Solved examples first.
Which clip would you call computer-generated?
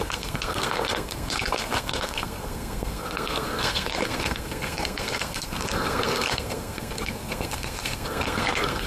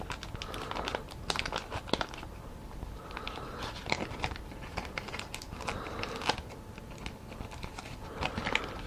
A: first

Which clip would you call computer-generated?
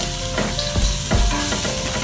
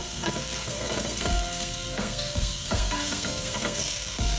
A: second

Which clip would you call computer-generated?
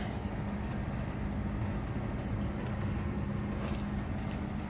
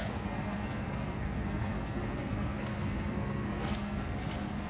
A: second